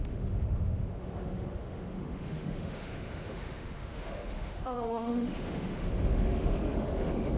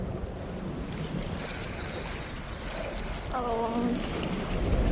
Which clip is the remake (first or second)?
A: first